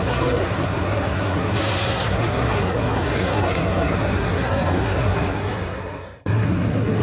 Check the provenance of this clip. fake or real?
fake